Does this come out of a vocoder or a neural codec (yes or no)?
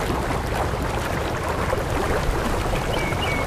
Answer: no